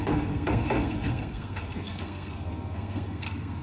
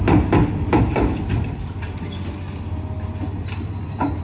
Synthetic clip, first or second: first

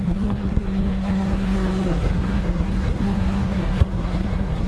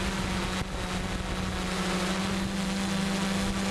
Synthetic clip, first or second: first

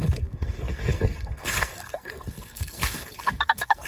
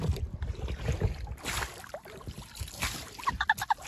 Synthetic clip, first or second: first